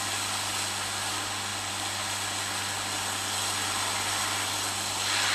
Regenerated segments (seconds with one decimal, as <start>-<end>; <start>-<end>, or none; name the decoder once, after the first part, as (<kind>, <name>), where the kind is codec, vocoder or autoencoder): none

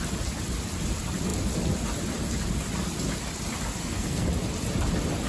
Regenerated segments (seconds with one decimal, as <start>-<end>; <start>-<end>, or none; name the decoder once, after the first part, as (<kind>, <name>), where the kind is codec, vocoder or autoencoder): 3.8-4.3 (codec, SNAC)